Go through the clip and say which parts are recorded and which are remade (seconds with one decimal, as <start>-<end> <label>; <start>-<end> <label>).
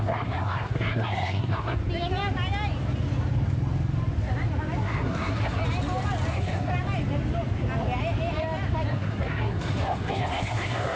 0.0-1.8 remade; 1.8-4.8 recorded; 4.8-5.6 remade; 5.6-6.3 recorded; 6.3-6.7 remade; 6.7-8.9 recorded; 8.9-11.0 remade